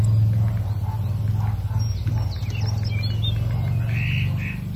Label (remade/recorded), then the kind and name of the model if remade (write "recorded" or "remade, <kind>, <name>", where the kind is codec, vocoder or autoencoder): recorded